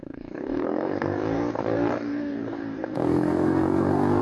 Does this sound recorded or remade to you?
remade